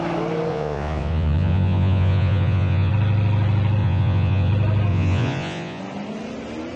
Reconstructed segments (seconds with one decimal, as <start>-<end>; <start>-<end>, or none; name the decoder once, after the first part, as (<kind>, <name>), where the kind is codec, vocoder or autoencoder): 0.5-2.9 (vocoder, Vocos); 3.8-4.5; 4.9-5.8